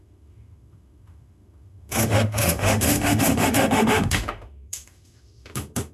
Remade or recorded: remade